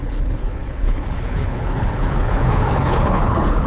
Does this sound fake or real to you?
fake